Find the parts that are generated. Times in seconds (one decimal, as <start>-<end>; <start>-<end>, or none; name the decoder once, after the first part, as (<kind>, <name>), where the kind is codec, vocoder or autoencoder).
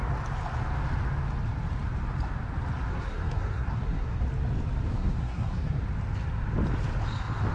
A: 2.9-4.2 (codec, SNAC); 4.9-5.8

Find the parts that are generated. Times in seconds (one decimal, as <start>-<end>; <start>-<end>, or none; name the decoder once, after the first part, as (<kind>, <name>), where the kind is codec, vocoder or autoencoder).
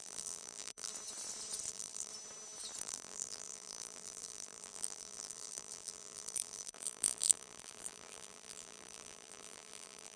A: 0.0-0.9 (vocoder, BigVGAN v2); 1.7-2.1; 2.8-10.2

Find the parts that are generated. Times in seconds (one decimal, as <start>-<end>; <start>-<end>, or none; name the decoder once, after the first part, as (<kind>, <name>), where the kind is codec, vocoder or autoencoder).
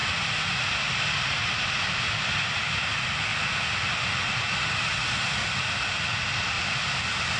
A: none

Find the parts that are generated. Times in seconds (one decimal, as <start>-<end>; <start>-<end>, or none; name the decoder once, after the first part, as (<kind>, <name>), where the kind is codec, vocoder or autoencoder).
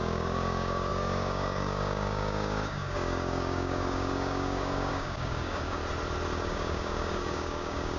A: 0.0-5.8 (codec, DAC); 6.4-8.0